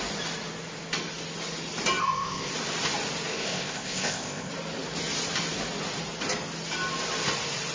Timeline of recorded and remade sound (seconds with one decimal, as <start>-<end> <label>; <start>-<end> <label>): 0.0-2.0 recorded; 2.0-2.5 remade; 2.5-3.3 recorded; 3.3-4.5 remade; 4.5-7.7 recorded